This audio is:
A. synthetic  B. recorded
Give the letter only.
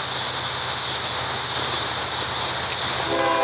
B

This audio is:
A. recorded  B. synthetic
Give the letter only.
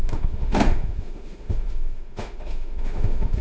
B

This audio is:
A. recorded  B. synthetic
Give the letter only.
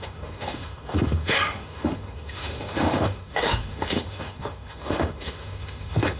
B